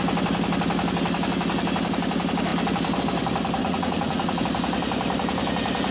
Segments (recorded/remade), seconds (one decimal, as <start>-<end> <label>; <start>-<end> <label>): 0.0-3.6 recorded; 3.6-4.4 remade; 4.4-5.9 recorded